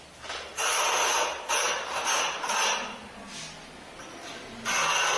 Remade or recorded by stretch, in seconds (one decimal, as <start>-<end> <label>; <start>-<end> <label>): 0.0-0.5 recorded; 0.5-2.5 remade; 2.5-5.2 recorded